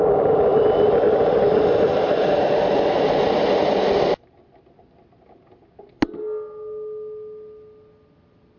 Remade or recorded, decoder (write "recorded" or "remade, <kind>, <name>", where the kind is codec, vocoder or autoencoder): recorded